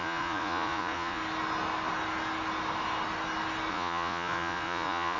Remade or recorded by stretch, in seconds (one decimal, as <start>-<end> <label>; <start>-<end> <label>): 0.0-1.2 remade; 1.2-3.7 recorded; 3.7-5.2 remade